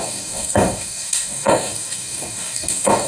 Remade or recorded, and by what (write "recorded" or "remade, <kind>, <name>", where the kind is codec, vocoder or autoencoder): remade, codec, DAC